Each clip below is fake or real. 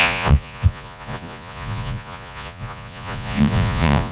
fake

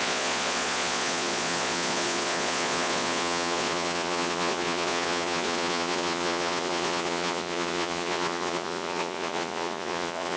fake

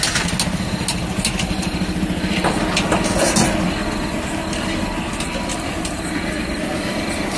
real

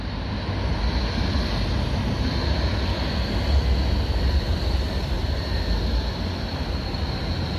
real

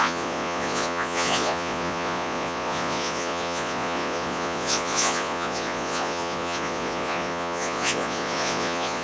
fake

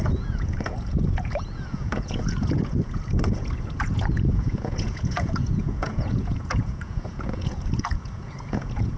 fake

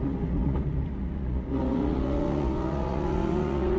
fake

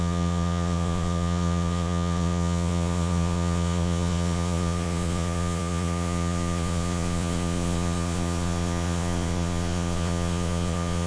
fake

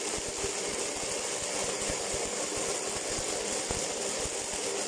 real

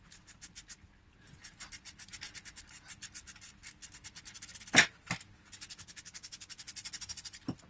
real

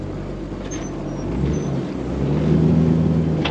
real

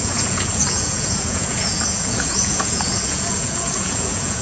fake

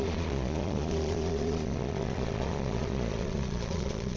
fake